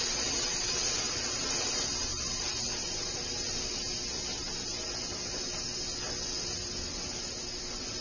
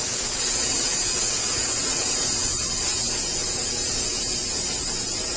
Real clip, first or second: first